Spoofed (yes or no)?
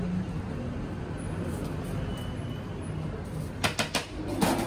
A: no